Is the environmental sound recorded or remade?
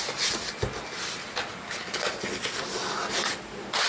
recorded